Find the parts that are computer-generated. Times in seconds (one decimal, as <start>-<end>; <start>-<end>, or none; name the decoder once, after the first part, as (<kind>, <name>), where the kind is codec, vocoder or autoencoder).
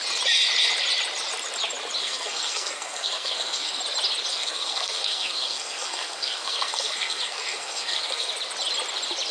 2.0-3.8 (codec, SNAC); 4.3-8.3